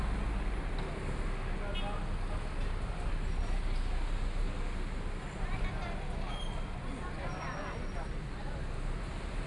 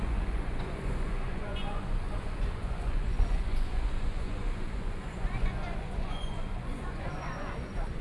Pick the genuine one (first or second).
first